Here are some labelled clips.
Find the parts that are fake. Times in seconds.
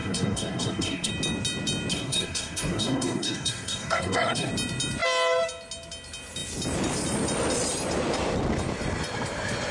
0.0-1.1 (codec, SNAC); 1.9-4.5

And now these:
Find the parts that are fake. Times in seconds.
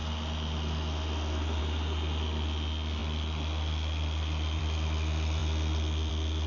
none